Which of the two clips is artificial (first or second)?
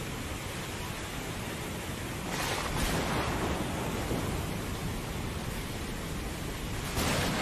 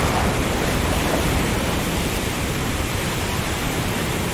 second